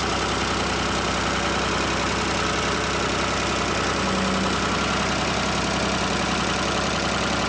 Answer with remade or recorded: recorded